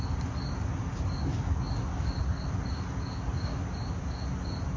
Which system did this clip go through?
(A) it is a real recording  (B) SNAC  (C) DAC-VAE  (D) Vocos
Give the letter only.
A